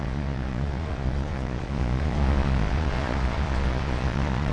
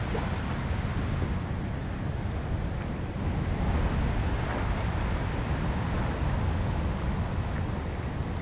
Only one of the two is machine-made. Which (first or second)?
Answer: first